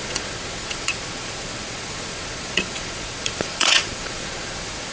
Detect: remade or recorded remade